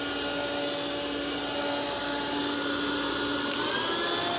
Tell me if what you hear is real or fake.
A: real